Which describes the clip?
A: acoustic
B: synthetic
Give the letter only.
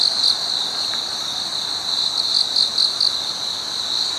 A